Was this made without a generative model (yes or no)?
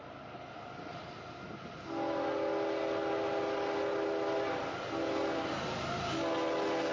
yes